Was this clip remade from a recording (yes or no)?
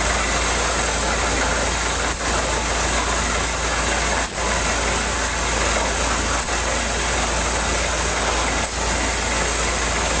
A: no